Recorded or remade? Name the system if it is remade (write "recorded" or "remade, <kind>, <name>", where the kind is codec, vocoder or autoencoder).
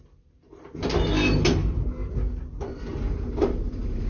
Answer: recorded